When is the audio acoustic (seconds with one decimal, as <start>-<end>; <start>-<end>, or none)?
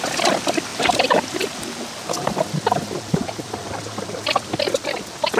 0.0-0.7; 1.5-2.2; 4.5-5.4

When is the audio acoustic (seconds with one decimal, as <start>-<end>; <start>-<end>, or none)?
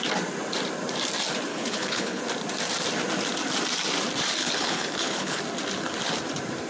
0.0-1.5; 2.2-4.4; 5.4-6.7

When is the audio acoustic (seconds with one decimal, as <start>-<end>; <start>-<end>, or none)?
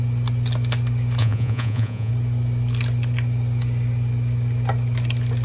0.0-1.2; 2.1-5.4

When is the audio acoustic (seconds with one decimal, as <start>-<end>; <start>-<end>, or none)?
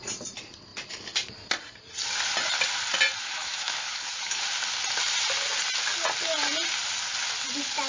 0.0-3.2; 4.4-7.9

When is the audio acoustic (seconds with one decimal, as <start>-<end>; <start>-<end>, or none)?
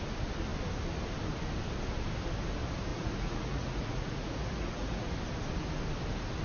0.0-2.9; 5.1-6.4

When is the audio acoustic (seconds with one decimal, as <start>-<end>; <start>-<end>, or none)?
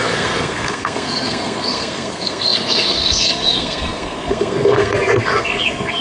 none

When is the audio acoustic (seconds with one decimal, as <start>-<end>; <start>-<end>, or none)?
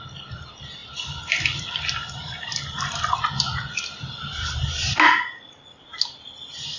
0.0-0.8; 4.5-5.9